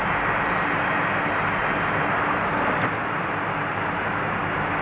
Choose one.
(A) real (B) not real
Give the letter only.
A